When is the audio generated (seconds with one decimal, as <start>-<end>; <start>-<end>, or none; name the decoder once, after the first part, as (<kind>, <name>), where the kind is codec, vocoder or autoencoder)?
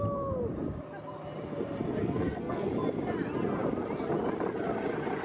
2.0-2.7 (codec, SNAC)